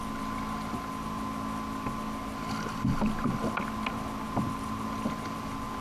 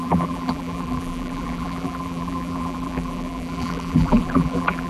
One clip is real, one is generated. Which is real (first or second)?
first